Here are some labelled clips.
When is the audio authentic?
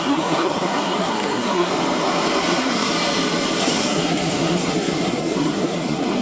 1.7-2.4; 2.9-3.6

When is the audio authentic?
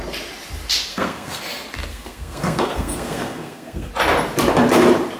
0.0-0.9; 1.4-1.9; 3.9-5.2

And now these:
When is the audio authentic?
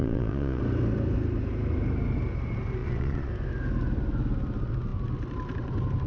0.6-2.8; 3.3-6.1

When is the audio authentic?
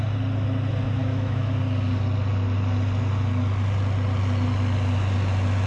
0.0-1.0; 1.6-5.7